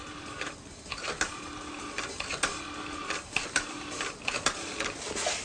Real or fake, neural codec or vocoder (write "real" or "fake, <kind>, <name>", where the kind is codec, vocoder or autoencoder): real